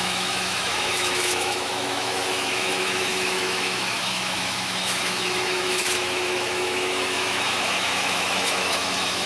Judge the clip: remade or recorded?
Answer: remade